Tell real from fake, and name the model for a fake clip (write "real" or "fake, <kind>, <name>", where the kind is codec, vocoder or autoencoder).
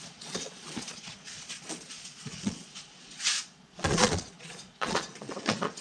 fake, vocoder, Vocos